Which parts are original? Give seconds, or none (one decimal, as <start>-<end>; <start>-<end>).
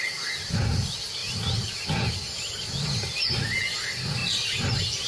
0.0-5.1